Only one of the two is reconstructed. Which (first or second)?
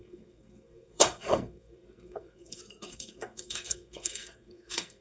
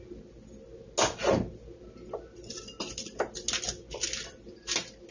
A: first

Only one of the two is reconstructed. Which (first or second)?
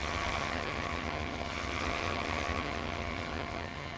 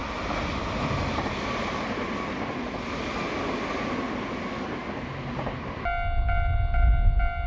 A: first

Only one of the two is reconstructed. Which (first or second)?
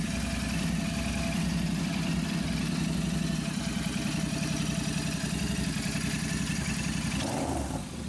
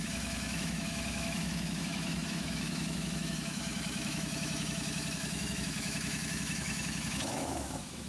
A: second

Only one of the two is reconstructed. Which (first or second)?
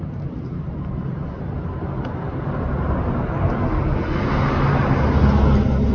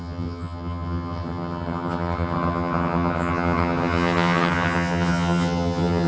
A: second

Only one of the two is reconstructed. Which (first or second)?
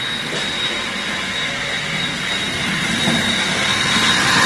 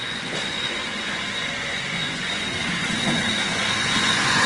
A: second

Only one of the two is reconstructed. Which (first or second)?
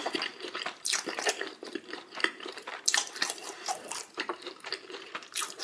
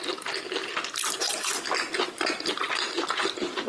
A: first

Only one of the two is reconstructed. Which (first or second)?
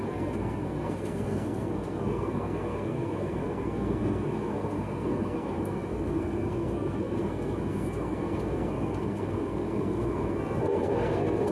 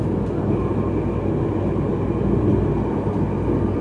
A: first